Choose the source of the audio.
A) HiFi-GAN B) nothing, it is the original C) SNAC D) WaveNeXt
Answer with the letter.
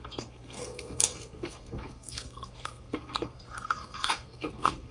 C